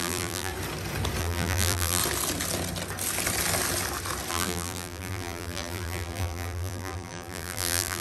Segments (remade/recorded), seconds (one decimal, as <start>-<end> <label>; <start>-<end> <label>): 0.0-0.5 remade; 0.5-1.2 recorded; 1.2-2.0 remade; 2.0-4.3 recorded; 4.3-8.0 remade